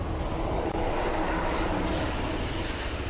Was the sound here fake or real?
real